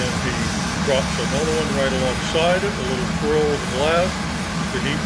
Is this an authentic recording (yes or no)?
yes